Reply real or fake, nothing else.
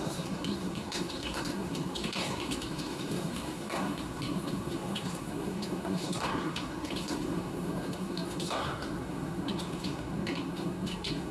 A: fake